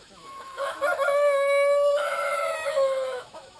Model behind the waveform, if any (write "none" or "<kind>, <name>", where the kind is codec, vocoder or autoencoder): autoencoder, DAC-VAE